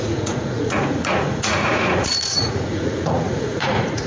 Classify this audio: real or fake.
fake